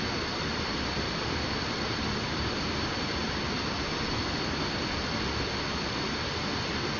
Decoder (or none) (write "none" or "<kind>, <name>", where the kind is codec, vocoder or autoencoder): none